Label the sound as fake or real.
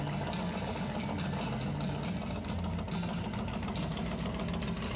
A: real